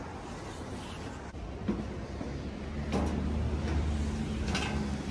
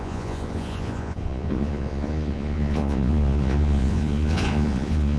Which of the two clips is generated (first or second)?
second